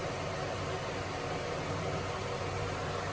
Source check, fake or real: real